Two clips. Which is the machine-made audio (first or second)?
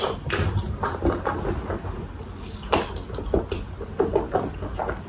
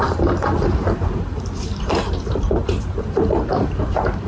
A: second